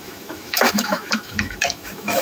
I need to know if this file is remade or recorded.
remade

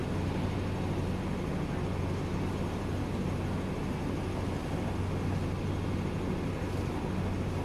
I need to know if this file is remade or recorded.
recorded